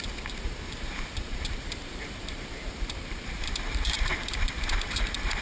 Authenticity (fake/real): fake